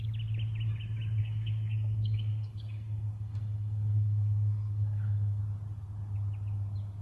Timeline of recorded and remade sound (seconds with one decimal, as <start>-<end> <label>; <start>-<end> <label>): 0.0-1.2 recorded; 1.2-5.4 remade; 5.4-7.0 recorded